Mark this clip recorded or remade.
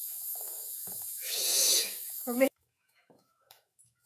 remade